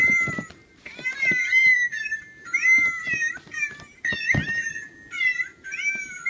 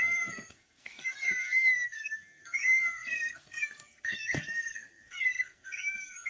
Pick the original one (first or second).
first